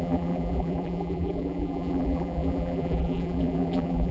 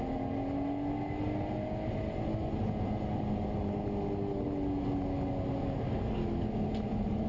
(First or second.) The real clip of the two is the second